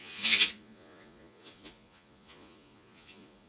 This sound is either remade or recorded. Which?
remade